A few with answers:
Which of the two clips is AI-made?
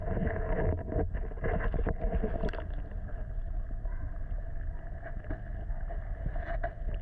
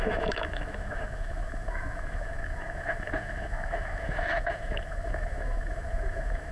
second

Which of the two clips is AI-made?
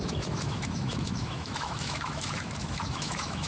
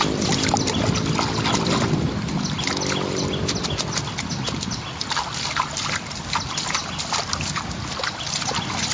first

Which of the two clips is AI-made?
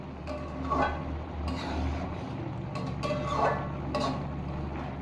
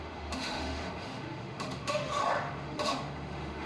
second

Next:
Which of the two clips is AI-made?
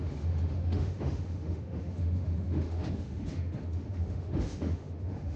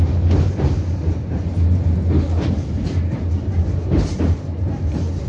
first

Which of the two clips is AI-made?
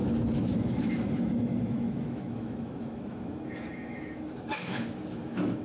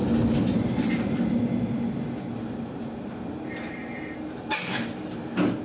first